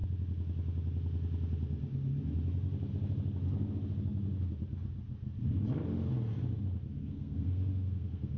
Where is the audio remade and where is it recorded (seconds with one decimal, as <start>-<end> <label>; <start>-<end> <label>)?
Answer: 0.0-7.0 recorded; 7.0-8.4 remade